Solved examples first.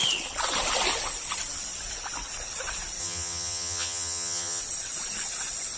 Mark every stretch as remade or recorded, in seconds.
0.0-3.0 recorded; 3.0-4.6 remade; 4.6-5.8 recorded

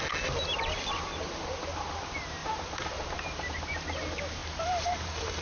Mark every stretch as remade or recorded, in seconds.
0.0-2.4 recorded; 2.4-3.5 remade; 3.5-4.4 recorded; 4.4-5.4 remade

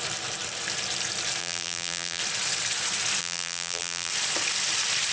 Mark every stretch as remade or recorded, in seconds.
0.0-1.4 recorded; 1.4-2.2 remade; 2.2-3.2 recorded; 3.2-4.1 remade; 4.1-5.1 recorded

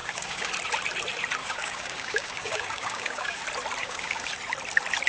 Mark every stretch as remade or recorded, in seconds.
0.0-0.5 remade; 0.5-1.4 recorded; 1.4-3.4 remade; 3.4-3.8 recorded; 3.8-4.3 remade; 4.3-5.1 recorded

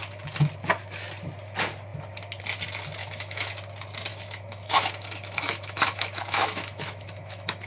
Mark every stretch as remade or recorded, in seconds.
0.0-3.0 recorded; 3.0-3.5 remade; 3.5-4.1 recorded; 4.1-7.7 remade